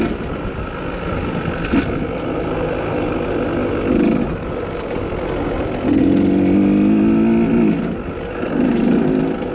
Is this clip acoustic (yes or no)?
yes